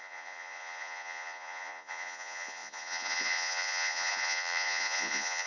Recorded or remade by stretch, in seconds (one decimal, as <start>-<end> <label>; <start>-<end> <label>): 0.0-5.5 remade